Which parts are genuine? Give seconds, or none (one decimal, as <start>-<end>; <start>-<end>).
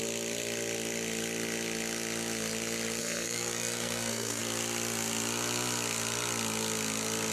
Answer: 0.0-3.0; 4.4-7.3